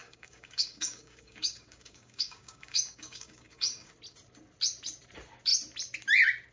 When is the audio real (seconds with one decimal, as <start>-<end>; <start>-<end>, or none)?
3.9-6.5